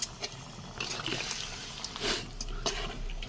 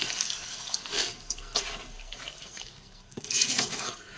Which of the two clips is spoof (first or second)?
second